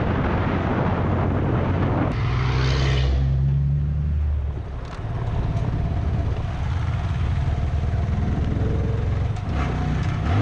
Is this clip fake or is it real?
real